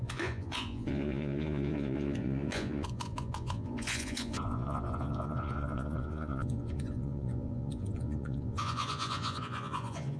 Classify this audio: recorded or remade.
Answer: remade